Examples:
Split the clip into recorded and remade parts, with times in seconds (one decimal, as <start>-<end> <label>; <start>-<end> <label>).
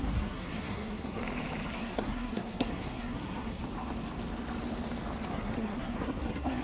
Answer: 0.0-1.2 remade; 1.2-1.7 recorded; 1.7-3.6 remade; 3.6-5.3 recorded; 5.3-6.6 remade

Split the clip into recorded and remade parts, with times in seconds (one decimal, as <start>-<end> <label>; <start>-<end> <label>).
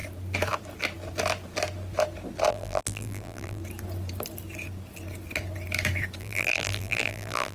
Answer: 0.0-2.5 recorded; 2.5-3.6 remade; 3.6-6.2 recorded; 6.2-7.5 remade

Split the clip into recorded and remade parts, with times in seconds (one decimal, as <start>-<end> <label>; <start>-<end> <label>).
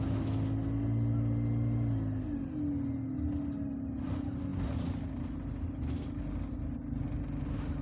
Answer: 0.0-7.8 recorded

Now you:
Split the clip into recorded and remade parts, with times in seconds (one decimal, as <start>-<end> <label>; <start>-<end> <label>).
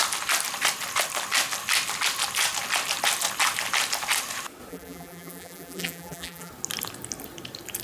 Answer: 0.0-4.7 recorded; 4.7-6.5 remade; 6.5-7.8 recorded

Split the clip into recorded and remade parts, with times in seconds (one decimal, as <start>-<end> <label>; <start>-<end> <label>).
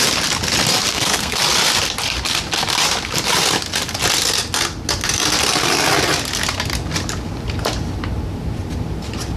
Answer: 0.0-0.9 recorded; 0.9-1.4 remade; 1.4-9.4 recorded